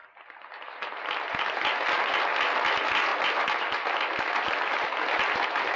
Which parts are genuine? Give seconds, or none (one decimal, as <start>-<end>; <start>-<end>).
0.0-5.8